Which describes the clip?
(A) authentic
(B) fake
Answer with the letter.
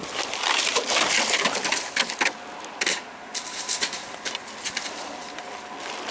A